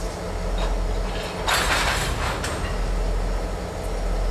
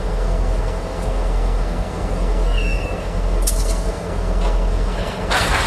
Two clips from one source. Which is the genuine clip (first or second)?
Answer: first